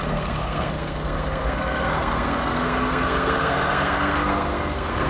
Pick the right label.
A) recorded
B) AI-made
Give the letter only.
B